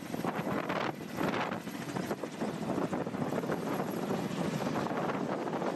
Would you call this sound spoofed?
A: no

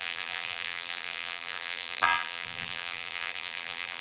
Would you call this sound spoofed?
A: yes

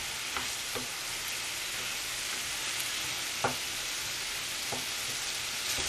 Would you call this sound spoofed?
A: no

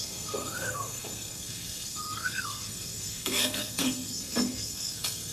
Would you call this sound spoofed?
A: yes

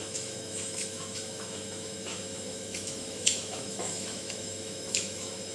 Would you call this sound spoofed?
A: yes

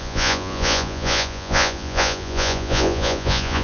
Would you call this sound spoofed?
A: yes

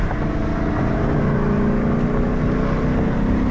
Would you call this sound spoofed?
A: no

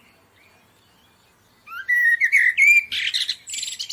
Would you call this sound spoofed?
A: no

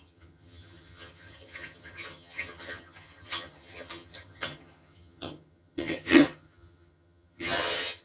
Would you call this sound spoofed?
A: yes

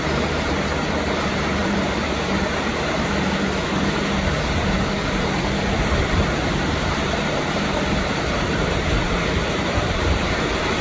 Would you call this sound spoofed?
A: yes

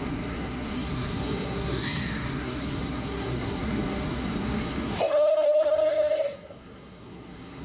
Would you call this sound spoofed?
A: yes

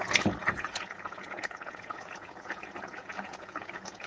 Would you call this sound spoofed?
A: yes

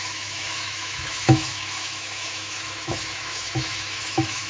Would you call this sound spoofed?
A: yes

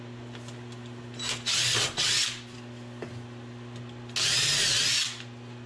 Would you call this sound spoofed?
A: no